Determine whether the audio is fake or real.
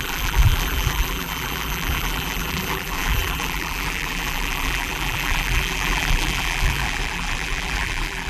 fake